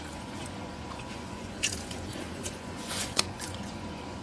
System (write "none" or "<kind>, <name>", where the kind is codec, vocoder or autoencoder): vocoder, Vocos